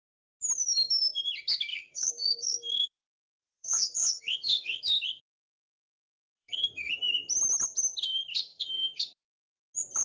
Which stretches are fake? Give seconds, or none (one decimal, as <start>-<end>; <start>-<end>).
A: 1.7-4.8; 6.1-6.9; 8.3-9.6